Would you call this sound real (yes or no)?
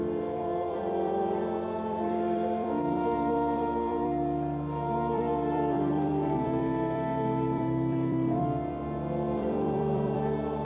no